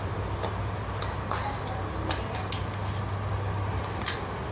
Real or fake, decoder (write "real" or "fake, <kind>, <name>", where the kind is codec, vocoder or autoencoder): real